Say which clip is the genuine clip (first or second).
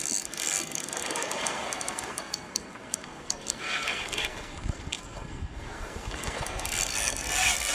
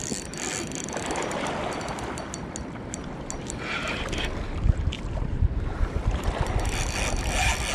second